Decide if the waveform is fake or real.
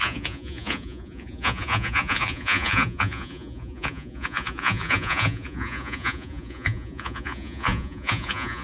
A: fake